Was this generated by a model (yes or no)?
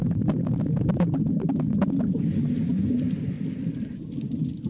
no